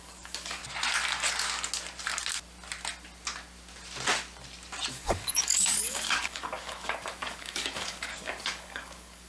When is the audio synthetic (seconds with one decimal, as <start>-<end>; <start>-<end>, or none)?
0.0-0.6; 4.9-9.3